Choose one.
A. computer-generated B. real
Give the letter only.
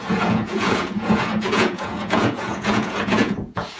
A